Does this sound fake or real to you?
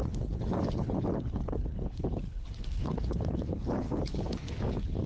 fake